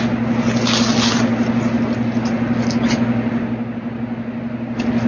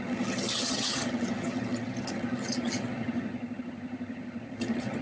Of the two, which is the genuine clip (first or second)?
first